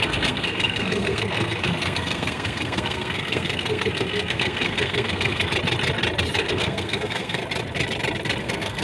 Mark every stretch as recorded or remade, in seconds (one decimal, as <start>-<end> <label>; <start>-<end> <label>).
0.0-5.5 remade; 5.5-6.4 recorded; 6.4-7.4 remade; 7.4-8.4 recorded; 8.4-8.8 remade